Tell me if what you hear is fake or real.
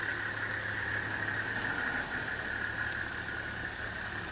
real